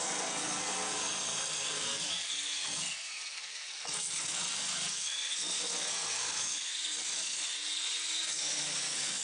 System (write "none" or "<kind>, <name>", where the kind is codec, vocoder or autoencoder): codec, SNAC